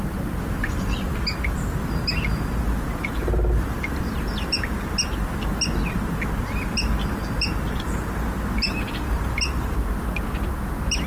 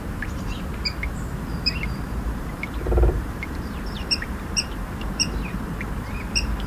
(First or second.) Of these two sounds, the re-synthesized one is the second